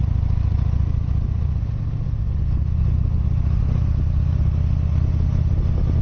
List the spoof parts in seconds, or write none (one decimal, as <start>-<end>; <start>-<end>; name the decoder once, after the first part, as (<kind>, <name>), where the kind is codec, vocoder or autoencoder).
none